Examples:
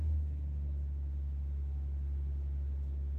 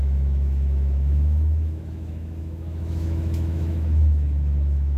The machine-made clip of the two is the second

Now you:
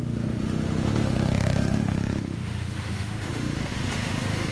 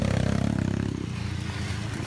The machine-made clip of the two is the first